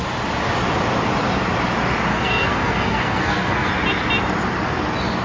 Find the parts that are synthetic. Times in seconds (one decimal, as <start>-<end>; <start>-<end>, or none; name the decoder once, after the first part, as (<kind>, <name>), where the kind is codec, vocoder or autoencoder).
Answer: 2.1-3.7 (codec, SNAC)